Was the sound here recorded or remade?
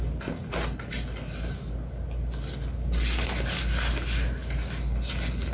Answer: recorded